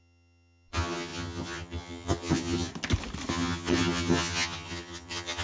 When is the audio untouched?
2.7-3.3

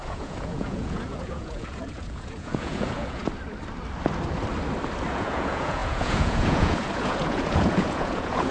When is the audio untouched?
3.2-5.1

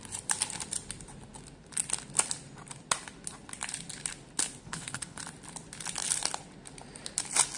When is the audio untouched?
0.0-4.6; 5.2-7.6

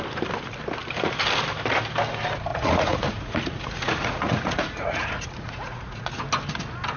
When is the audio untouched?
0.0-2.5; 6.2-7.0

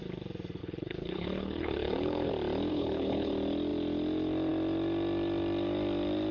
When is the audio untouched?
0.0-0.6; 2.3-2.7; 3.3-6.3

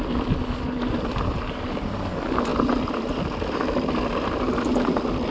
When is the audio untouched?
0.0-2.5

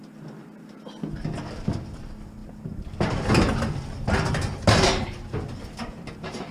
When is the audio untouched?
0.0-6.5

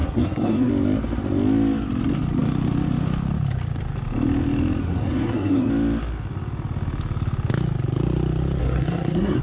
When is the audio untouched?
0.7-4.8; 5.7-8.6